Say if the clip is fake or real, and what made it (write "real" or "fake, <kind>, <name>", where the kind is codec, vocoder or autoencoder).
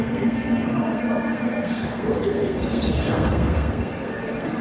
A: fake, codec, SNAC